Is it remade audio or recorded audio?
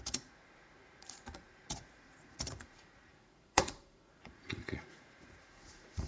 remade